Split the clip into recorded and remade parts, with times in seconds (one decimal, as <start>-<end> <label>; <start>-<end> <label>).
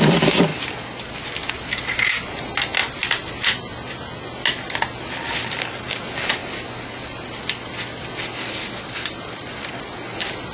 0.0-10.5 recorded